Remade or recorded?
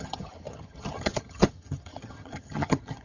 remade